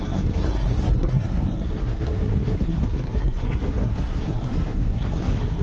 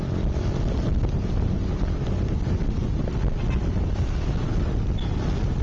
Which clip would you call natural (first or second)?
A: second